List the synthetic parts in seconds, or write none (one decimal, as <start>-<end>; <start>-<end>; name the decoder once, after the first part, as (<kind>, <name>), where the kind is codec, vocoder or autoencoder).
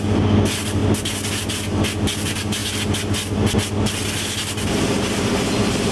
none